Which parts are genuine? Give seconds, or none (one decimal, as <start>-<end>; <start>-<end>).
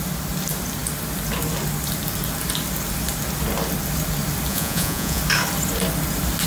0.0-4.5; 5.2-6.5